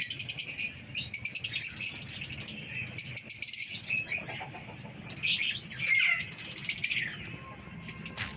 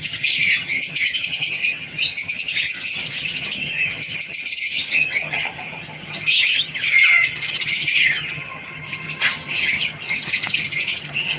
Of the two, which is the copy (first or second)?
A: second